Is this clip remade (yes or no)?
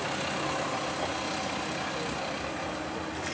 no